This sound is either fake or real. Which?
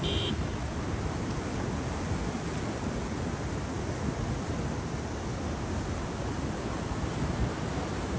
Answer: real